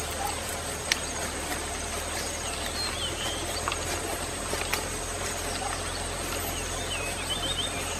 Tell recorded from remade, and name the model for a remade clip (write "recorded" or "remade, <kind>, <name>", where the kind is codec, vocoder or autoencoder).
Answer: recorded